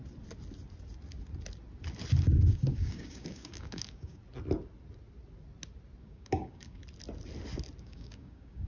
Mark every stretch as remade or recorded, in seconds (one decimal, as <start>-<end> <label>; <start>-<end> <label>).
0.0-2.2 recorded; 2.2-4.2 remade; 4.2-6.0 recorded; 6.0-6.8 remade; 6.8-7.8 recorded; 7.8-8.7 remade